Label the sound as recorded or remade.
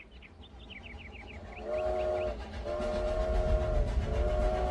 recorded